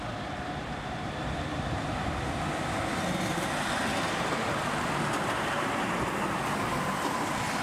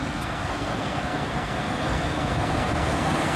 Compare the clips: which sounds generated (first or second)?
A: second